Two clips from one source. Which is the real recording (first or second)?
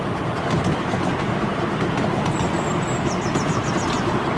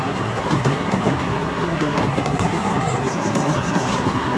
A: first